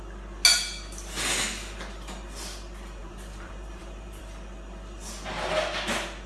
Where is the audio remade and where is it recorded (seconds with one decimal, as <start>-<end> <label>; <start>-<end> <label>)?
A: 0.0-3.0 recorded; 3.0-4.2 remade; 4.2-6.3 recorded